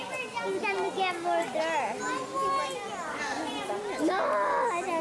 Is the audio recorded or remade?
recorded